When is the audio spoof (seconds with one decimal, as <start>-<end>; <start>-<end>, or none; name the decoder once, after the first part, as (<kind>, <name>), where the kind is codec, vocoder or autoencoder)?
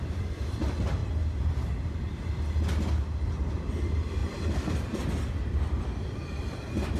0.0-1.0 (vocoder, BigVGAN v2); 3.0-7.0